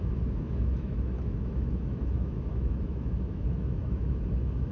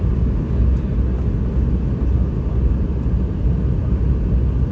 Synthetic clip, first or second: first